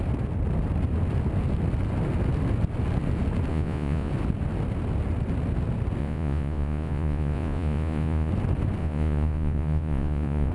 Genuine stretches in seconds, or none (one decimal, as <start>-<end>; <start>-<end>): 0.0-3.5; 4.1-6.0; 8.3-8.8

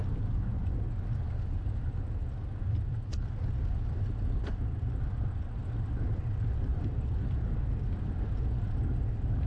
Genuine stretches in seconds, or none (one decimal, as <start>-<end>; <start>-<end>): 0.0-6.7; 7.5-9.5

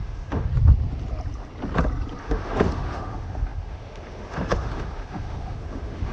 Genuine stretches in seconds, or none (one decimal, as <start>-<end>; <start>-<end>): 0.5-2.2

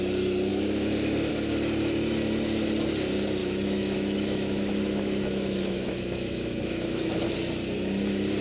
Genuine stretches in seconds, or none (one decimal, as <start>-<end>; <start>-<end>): 0.0-3.4; 7.2-8.4